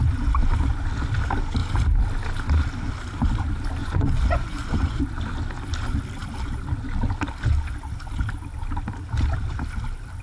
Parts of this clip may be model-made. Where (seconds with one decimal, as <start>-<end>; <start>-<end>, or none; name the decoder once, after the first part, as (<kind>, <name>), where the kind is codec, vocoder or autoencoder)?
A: 3.8-5.0 (vocoder, Vocos)